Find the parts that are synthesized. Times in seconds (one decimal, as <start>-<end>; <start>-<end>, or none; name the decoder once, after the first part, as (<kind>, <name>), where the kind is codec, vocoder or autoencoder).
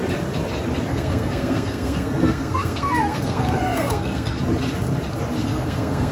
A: 0.9-4.4 (codec, SNAC); 5.4-6.1